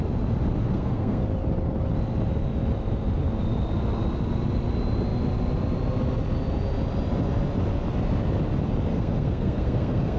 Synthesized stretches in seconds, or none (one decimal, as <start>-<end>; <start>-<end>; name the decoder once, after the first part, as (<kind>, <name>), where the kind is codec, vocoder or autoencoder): 0.7-1.2 (codec, SNAC); 8.9-10.2